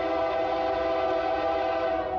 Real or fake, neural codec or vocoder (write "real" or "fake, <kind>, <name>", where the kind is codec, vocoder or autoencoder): real